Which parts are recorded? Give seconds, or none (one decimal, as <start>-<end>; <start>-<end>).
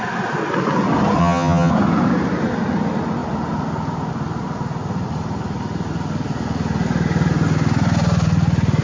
0.0-1.2; 1.7-8.8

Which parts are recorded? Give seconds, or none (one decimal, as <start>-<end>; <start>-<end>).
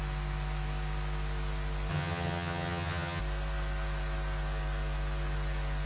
0.0-1.9; 3.2-5.9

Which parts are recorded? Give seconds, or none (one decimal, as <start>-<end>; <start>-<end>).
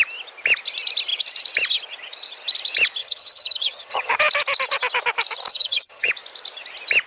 0.0-3.0; 4.2-5.5; 6.1-7.1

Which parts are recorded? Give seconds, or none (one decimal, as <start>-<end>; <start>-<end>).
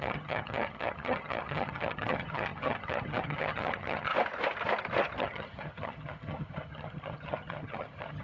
4.1-5.2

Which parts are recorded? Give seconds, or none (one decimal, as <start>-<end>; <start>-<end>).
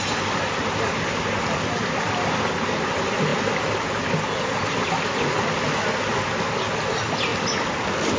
0.0-8.2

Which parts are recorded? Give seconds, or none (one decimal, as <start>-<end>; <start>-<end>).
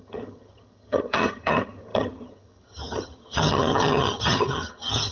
none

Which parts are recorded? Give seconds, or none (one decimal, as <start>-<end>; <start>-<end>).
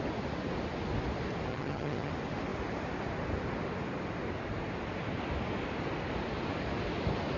0.0-1.5; 2.1-7.4